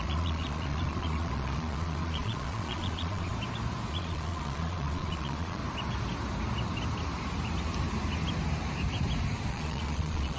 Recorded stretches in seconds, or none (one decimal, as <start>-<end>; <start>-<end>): 3.3-3.9; 5.6-9.5